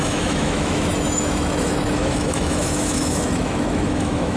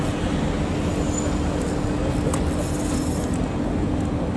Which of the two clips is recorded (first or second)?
second